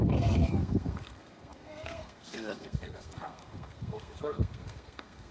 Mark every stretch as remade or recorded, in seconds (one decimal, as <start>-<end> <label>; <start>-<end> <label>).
0.0-5.3 remade